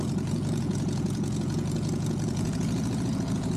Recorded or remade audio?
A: remade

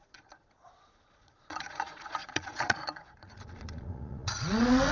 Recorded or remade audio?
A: remade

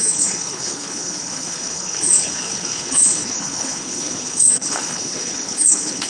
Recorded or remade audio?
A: remade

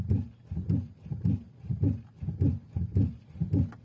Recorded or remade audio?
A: recorded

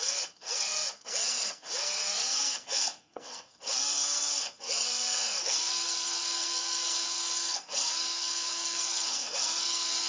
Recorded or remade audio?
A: remade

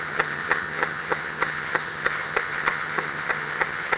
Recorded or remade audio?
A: remade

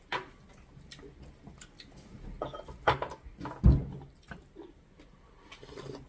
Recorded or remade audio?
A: recorded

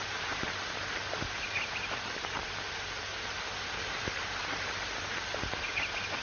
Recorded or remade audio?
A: recorded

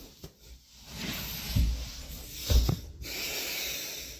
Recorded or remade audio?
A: recorded